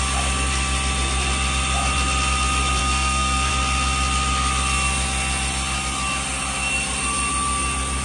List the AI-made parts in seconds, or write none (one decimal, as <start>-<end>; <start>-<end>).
2.8-3.5